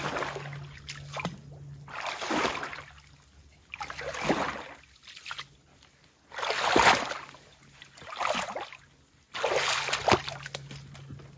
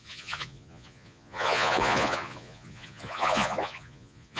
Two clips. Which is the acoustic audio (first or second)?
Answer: first